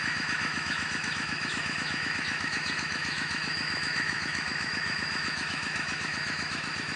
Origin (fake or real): fake